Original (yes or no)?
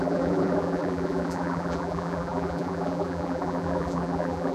no